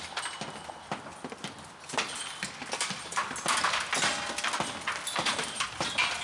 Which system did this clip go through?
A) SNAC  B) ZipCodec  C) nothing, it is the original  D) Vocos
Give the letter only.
C